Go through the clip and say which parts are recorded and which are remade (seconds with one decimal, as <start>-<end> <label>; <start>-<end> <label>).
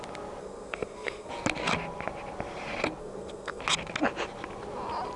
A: 0.0-0.4 recorded; 0.4-1.3 remade; 1.3-3.0 recorded; 3.0-3.6 remade; 3.6-5.2 recorded